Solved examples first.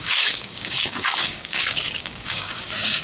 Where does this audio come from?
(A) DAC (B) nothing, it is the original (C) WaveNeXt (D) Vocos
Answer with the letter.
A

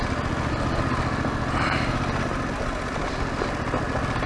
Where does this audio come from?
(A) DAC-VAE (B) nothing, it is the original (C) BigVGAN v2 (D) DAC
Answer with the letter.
B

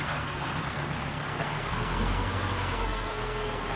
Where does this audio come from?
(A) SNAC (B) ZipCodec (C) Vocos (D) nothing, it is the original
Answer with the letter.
A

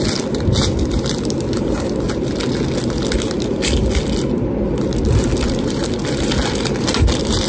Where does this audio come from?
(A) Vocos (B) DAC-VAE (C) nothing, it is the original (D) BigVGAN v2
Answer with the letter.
C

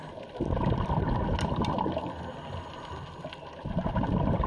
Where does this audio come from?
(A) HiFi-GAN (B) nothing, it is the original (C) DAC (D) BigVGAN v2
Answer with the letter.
B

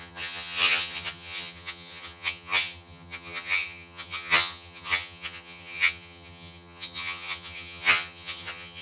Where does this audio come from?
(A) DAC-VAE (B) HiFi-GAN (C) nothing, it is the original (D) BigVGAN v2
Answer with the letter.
B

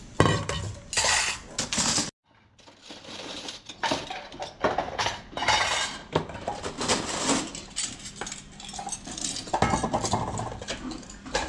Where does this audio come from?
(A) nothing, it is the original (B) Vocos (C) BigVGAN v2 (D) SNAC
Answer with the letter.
A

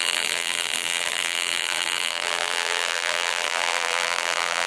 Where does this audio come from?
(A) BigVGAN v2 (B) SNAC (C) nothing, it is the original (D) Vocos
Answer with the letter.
A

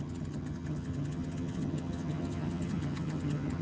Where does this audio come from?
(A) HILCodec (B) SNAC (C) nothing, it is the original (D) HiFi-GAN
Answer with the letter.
D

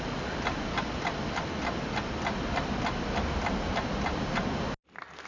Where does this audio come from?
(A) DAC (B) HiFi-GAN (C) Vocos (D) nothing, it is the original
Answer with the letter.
D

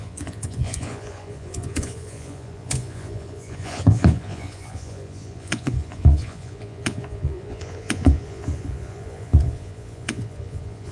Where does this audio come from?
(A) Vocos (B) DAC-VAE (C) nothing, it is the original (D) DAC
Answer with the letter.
A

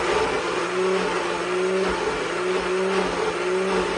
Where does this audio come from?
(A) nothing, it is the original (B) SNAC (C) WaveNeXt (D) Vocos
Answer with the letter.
A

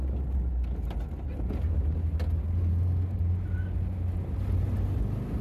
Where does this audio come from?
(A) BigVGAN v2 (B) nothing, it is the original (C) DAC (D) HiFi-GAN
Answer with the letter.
B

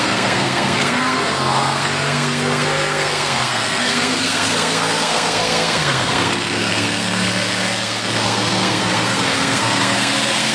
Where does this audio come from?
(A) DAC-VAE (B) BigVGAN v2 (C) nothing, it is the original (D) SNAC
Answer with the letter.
D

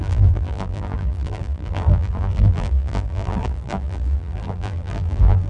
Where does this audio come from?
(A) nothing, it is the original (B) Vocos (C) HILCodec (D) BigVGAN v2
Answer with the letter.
D